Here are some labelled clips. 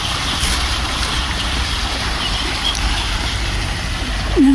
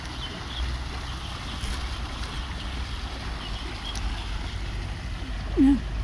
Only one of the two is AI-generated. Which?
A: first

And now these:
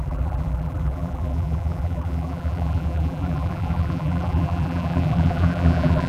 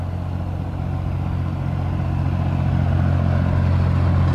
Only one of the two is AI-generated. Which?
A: first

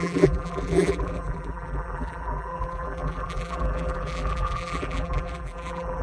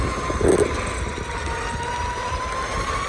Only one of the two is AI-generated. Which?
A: first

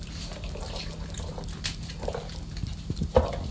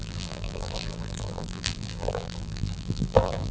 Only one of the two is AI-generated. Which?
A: second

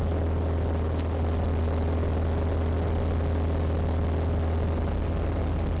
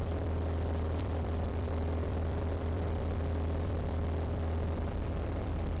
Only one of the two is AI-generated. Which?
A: second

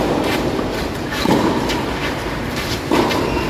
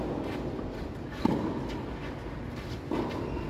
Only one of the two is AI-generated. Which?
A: first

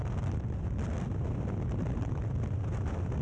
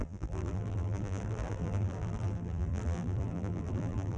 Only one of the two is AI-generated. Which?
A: second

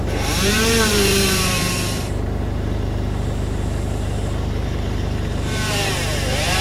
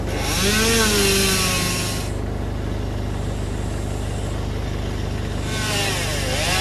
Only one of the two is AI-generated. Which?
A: first